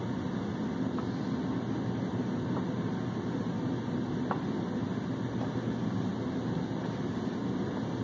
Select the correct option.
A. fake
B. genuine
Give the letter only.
B